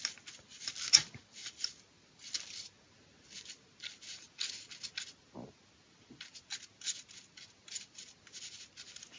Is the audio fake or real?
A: real